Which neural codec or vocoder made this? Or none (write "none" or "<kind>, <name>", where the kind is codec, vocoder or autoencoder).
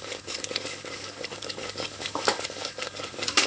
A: codec, DAC